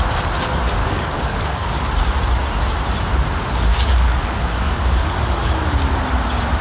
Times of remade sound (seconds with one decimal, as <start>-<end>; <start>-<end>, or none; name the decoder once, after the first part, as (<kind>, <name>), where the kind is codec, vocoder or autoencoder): 0.8-1.9 (codec, DAC); 3.7-5.5